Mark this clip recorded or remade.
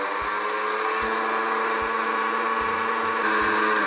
recorded